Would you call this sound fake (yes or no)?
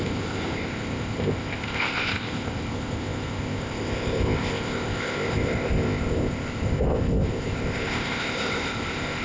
yes